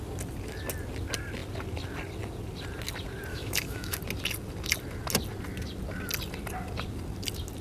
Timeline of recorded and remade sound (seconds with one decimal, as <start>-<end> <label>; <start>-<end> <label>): 0.0-3.3 recorded; 3.3-4.0 remade; 4.0-7.6 recorded